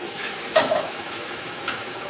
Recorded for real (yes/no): no